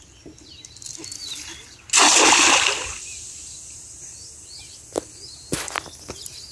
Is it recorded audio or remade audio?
recorded